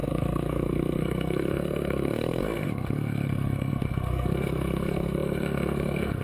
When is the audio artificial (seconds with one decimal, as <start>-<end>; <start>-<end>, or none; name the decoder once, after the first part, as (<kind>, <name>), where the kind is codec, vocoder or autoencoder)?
0.0-6.2 (codec, SNAC)